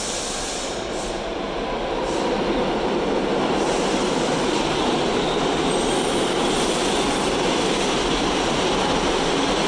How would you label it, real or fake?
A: real